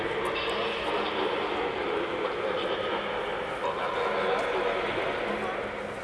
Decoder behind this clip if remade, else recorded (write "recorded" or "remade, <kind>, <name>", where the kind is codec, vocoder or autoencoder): recorded